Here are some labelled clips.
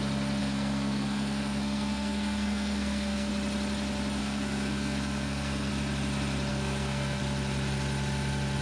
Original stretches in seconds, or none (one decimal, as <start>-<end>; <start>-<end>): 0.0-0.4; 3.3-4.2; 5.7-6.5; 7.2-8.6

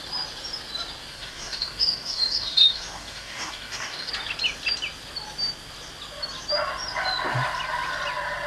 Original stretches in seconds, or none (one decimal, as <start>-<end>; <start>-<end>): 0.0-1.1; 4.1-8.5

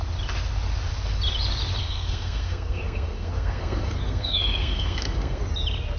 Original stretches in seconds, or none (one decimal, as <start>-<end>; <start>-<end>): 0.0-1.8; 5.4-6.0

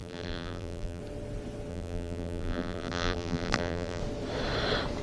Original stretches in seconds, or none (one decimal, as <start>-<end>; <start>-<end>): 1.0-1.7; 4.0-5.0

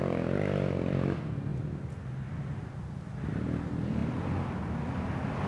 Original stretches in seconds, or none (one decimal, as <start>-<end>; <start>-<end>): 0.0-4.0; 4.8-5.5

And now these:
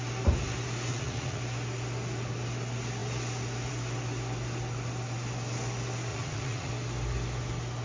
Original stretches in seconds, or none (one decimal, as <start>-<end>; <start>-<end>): 0.0-0.9; 1.4-6.1; 6.7-7.8

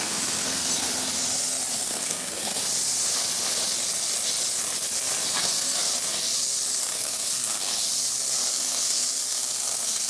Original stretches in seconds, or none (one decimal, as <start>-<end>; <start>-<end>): 0.9-1.7; 2.6-5.3; 5.9-6.8; 7.7-8.5

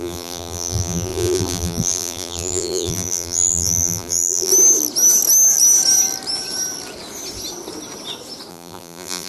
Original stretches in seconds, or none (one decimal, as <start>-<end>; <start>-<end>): 4.5-8.5